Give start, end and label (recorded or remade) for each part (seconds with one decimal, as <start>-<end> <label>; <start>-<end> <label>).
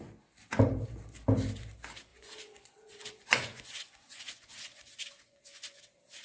0.0-2.1 recorded; 2.1-5.8 remade; 5.8-6.2 recorded